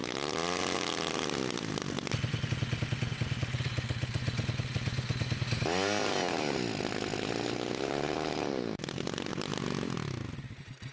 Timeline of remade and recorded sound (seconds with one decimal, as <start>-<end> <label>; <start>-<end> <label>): 0.0-10.9 recorded